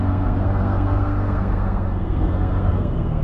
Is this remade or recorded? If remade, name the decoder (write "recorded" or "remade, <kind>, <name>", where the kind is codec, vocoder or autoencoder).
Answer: remade, codec, SNAC